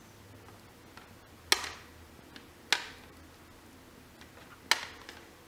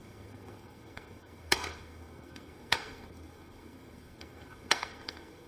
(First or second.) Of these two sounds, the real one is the first